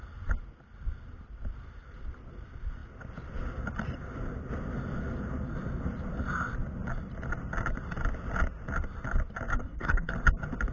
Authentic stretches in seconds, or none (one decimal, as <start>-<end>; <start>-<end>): 0.0-9.5; 10.1-10.7